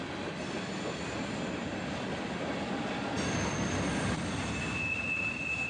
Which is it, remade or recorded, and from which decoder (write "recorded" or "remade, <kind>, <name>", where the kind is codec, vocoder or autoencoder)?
recorded